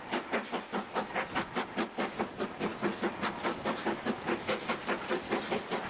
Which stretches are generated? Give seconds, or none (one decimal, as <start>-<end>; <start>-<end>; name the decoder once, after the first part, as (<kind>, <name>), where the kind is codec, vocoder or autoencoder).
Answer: none